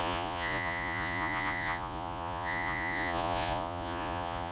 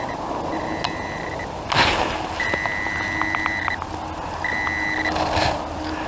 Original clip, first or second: second